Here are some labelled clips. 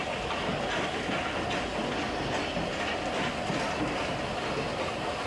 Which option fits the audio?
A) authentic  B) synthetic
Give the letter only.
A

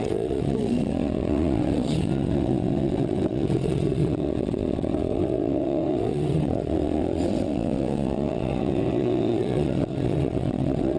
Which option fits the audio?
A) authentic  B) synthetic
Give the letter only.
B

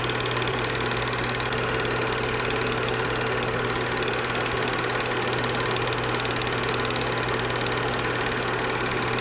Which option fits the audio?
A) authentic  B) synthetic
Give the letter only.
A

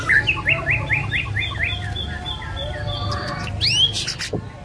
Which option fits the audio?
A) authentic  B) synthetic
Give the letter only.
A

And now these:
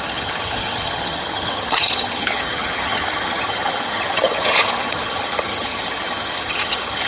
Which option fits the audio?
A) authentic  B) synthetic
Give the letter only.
B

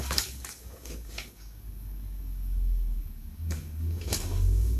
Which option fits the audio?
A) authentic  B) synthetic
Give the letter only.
B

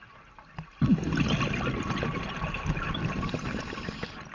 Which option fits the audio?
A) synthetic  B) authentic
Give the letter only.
B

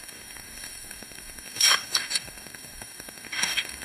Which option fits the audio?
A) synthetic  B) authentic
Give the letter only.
A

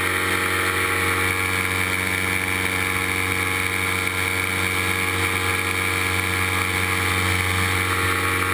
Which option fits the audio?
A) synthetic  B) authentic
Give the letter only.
B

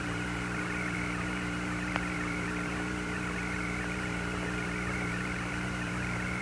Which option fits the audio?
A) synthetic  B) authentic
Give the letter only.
A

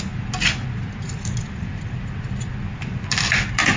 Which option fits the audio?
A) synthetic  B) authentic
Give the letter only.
B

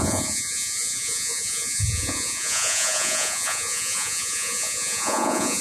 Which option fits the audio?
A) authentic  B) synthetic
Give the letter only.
B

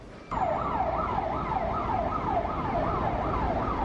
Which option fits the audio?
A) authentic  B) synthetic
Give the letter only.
A